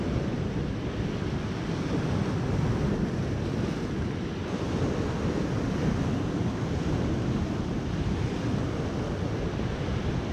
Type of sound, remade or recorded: recorded